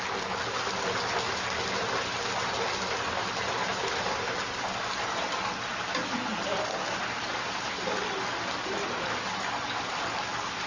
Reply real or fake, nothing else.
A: real